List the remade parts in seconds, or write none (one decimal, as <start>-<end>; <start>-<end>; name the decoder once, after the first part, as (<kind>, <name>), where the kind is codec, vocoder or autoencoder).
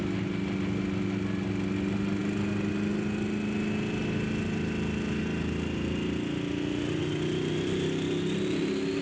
none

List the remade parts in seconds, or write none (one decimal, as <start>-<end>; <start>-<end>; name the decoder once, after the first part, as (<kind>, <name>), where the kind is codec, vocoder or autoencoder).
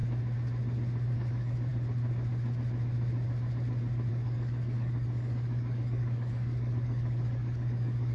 1.1-1.7 (codec, DAC); 4.1-8.1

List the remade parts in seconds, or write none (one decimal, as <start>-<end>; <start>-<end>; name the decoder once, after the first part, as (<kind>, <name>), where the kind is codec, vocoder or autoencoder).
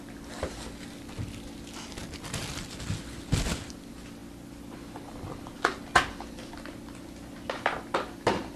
none